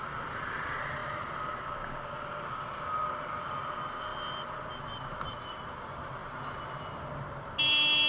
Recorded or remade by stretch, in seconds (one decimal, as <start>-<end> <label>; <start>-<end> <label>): 0.0-8.1 recorded